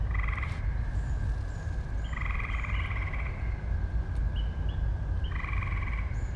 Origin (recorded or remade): recorded